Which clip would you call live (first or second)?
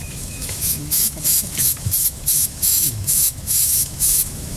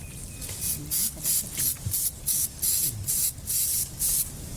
second